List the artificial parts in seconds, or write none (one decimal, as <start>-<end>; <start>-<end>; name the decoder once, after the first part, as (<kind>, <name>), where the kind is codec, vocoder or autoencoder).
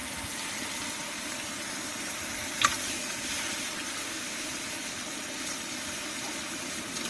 4.0-4.5 (autoencoder, DAC-VAE)